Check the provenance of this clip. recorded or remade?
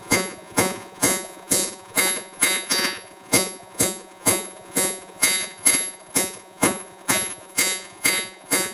remade